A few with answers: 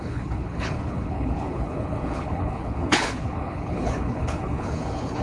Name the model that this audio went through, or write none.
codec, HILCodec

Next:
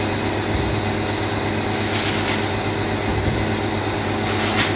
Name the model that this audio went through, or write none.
none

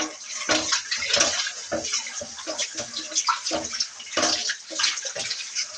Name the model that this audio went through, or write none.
none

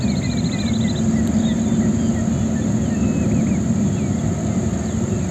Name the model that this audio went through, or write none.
none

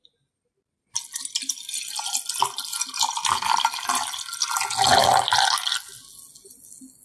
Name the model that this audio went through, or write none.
none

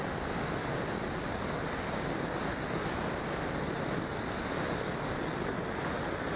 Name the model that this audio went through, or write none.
none